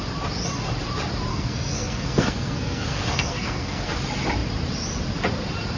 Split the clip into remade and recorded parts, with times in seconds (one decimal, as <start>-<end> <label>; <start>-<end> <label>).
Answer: 0.0-1.3 recorded; 1.3-4.0 remade; 4.0-5.8 recorded